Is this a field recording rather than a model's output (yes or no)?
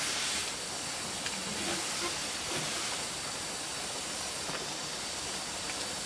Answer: yes